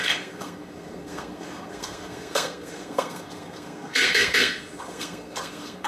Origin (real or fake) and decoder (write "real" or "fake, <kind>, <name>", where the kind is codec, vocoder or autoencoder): fake, codec, SNAC